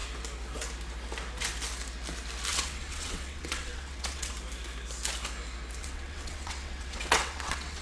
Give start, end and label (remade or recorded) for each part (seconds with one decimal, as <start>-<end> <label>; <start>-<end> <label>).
0.0-2.5 recorded; 2.5-4.3 remade; 4.3-5.8 recorded; 5.8-7.8 remade